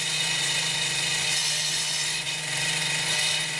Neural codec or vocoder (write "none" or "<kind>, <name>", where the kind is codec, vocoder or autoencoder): vocoder, Vocos